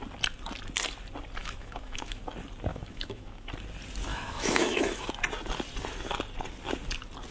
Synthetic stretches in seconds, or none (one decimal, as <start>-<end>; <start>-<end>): 1.4-2.2; 2.7-3.5; 4.1-5.1